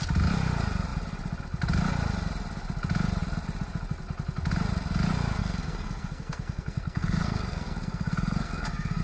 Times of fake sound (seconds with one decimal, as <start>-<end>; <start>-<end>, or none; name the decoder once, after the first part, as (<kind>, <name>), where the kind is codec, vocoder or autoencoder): 5.4-9.0 (codec, SNAC)